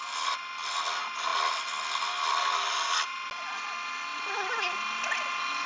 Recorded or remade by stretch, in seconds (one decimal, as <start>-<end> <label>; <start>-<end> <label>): 0.0-5.7 recorded